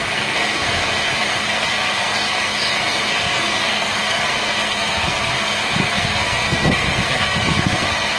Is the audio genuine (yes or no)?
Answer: no